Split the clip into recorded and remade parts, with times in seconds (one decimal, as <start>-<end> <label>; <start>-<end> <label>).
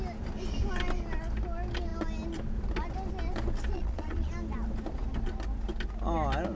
0.0-3.7 recorded; 3.7-4.3 remade; 4.3-6.6 recorded